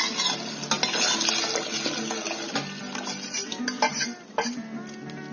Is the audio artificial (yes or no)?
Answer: no